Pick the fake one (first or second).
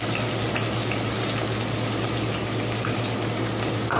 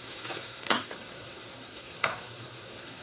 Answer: second